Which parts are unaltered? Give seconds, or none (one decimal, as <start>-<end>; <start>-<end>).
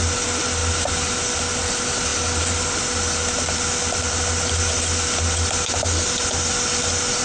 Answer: 0.0-7.2